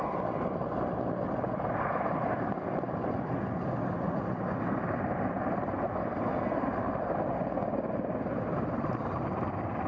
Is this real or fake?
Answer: real